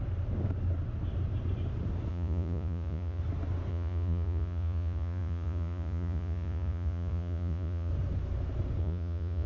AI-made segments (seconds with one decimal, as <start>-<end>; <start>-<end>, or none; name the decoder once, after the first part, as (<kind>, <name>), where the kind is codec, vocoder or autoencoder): 2.1-3.2 (vocoder, Vocos); 3.7-7.9; 8.8-9.5